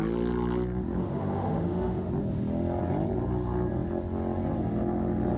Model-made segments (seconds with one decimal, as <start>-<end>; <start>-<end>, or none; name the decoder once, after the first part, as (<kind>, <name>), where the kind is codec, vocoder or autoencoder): 1.0-2.1 (autoencoder, DAC-VAE)